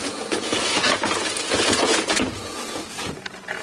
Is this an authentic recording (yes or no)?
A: no